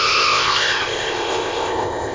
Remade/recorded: remade